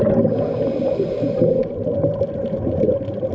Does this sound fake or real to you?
real